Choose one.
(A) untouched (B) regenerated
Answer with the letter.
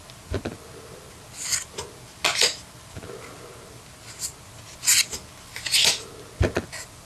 A